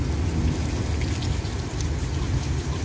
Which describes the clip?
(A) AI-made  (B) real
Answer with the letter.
B